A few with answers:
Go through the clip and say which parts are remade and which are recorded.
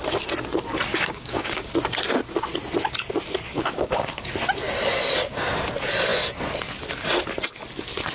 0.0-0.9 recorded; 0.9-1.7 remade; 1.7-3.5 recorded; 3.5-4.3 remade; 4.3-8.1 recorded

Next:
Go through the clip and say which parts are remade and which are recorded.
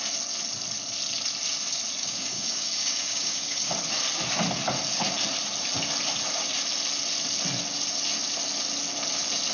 0.0-2.0 recorded; 2.0-3.7 remade; 3.7-9.5 recorded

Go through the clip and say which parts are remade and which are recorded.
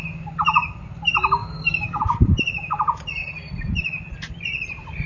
0.0-1.4 recorded; 1.4-2.0 remade; 2.0-5.1 recorded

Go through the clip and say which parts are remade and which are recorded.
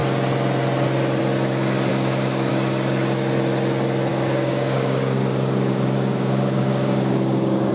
0.0-1.9 recorded; 1.9-2.5 remade; 2.5-4.1 recorded; 4.1-7.7 remade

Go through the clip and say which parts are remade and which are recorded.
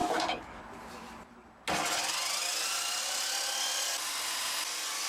0.0-0.6 remade; 0.6-5.1 recorded